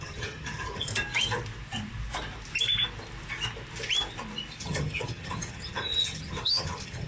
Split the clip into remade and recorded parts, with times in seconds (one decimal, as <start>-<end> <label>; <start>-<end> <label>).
0.0-0.9 remade; 0.9-4.6 recorded; 4.6-7.1 remade